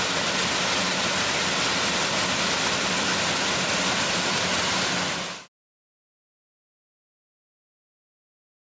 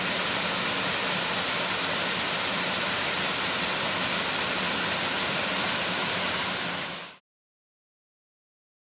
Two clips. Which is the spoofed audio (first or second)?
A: second